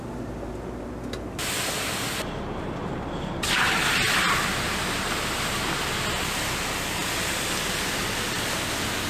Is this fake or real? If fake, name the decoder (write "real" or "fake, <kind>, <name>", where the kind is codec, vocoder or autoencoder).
real